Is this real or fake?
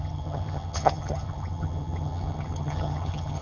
fake